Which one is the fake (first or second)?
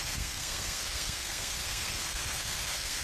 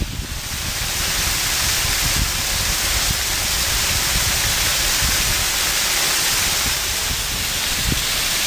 first